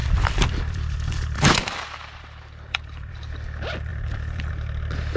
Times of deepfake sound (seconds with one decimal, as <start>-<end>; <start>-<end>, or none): 0.0-3.1; 3.9-4.5